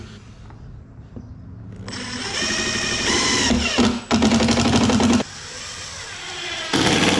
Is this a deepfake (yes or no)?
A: no